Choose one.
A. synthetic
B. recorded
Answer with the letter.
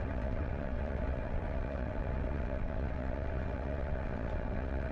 A